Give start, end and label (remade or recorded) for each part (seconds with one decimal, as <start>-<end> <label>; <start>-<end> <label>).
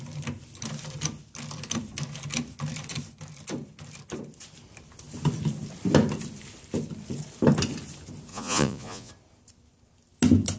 0.0-8.3 recorded; 8.3-9.1 remade; 9.1-10.6 recorded